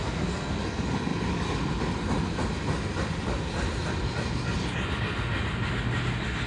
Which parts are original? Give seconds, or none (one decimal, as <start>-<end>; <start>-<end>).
0.0-6.5